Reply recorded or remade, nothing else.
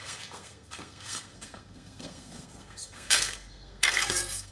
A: remade